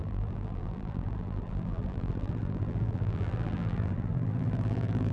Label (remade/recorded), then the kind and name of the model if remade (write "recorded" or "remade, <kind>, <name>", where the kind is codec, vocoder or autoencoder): remade, vocoder, BigVGAN v2